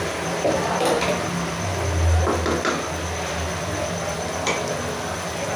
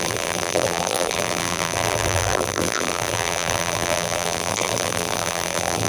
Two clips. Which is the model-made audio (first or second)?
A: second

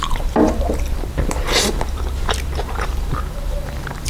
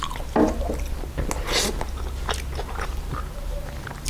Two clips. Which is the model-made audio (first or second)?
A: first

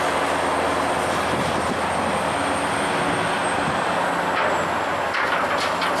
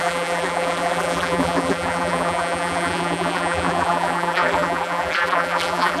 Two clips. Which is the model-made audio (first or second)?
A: second